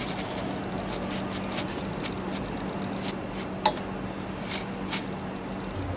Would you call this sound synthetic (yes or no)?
no